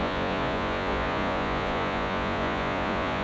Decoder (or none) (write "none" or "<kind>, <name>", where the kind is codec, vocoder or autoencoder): vocoder, Vocos